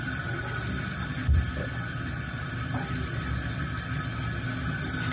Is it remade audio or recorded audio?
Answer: recorded